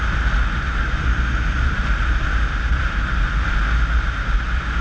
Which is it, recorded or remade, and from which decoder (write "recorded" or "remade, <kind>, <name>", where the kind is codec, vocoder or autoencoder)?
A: recorded